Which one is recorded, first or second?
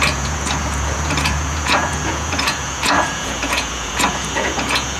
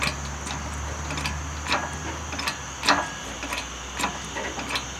second